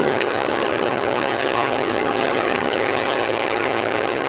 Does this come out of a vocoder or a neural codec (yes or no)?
yes